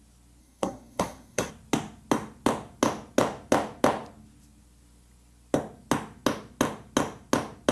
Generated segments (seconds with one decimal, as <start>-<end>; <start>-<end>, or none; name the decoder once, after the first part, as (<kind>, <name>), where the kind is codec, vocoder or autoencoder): 0.4-1.5 (codec, SNAC)

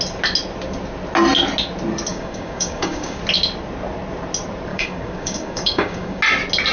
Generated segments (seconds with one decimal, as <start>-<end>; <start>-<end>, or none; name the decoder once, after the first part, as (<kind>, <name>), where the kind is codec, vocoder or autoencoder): 2.1-3.2 (codec, DAC); 4.7-6.2

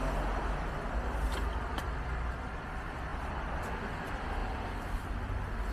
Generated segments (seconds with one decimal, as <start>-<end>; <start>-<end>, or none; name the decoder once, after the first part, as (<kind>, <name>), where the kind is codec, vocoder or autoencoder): 4.4-5.1 (vocoder, BigVGAN v2)

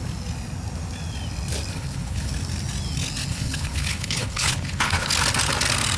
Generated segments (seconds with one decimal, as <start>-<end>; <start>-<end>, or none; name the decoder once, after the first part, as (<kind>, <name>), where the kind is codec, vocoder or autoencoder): 1.7-2.3 (codec, HILCodec); 3.3-5.1

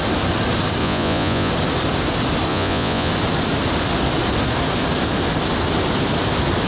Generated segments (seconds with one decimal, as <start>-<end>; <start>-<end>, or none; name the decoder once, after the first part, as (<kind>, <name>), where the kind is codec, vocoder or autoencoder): 0.8-1.5 (vocoder, Vocos); 2.5-3.1